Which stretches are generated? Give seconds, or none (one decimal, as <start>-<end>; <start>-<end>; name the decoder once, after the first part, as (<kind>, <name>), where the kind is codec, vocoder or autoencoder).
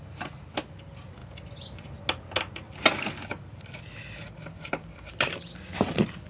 none